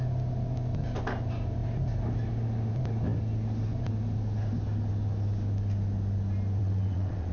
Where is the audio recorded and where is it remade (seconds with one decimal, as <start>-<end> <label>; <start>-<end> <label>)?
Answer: 0.0-6.6 recorded; 6.6-7.3 remade